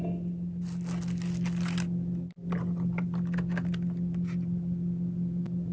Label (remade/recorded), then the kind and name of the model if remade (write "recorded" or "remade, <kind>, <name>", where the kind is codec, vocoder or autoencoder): recorded